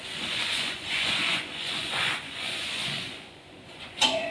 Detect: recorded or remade remade